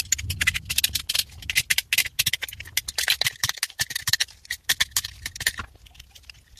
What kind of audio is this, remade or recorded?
recorded